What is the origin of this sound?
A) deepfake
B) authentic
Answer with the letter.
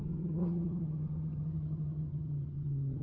A